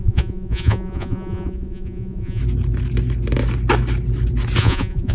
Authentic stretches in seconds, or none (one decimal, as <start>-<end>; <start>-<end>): 2.4-4.6